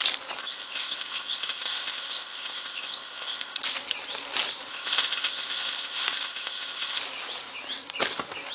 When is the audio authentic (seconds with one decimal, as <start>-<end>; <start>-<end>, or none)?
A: 0.0-0.4; 3.6-4.7; 7.0-8.5